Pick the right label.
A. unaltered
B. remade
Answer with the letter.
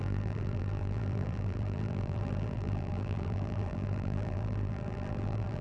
B